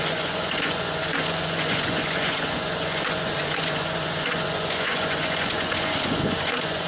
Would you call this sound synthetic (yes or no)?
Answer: yes